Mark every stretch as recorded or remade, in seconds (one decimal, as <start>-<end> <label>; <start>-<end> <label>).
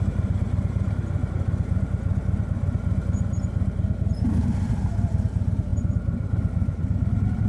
0.0-1.2 remade; 1.2-4.1 recorded; 4.1-7.5 remade